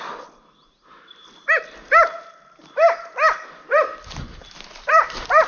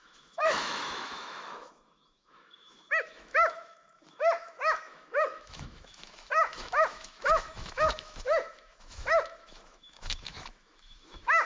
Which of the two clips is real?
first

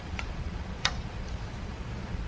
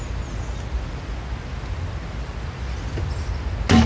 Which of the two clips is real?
second